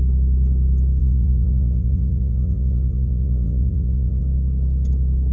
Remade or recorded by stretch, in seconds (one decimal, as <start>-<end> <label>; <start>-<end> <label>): 0.0-1.0 recorded; 1.0-4.2 remade; 4.2-5.3 recorded